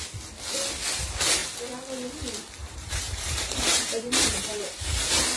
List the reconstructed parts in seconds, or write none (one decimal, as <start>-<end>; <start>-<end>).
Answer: 2.6-5.4